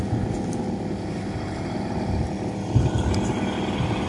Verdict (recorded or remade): recorded